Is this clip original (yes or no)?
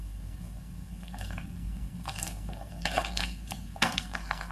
no